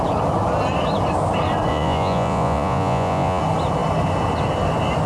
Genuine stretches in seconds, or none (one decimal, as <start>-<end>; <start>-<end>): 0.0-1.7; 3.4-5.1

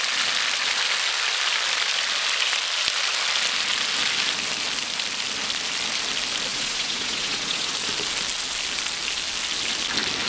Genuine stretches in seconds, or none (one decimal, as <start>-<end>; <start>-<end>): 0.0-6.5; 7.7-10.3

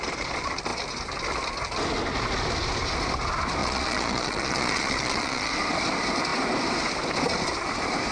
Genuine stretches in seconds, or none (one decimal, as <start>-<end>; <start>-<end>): 0.0-3.6; 5.5-8.1